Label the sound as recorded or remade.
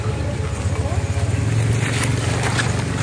recorded